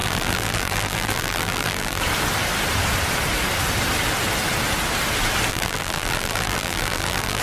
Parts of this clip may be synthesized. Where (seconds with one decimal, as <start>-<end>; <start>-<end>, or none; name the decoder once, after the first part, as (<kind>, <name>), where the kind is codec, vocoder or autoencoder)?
0.0-2.0 (vocoder, BigVGAN v2); 5.5-7.4